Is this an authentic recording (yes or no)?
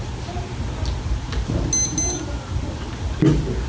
yes